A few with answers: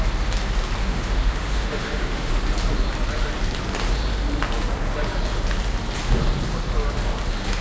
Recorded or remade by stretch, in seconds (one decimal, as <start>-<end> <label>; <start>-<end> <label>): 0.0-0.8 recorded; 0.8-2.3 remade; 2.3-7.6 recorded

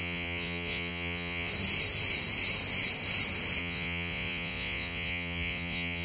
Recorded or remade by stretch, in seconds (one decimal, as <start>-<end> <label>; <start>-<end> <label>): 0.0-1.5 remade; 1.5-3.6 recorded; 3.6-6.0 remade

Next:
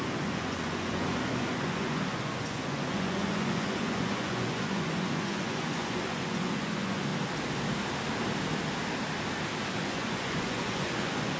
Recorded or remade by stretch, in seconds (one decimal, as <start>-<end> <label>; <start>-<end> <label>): 0.0-7.1 remade; 7.1-9.7 recorded; 9.7-11.4 remade

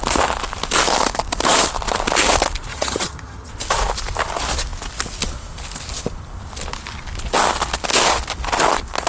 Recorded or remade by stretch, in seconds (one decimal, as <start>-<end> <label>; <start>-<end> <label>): 0.0-2.7 recorded; 2.7-3.5 remade; 3.5-9.1 recorded